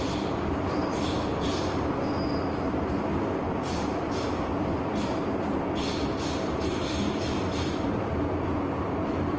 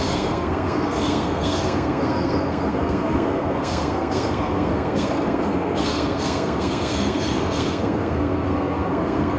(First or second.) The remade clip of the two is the second